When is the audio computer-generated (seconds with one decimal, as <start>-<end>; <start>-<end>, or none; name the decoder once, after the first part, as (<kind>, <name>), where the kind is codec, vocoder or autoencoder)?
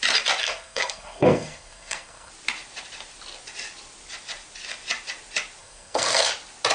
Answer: 0.4-2.3 (codec, SNAC); 5.6-6.3